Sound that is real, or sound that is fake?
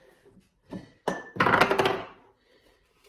real